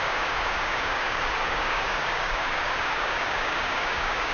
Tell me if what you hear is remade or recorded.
remade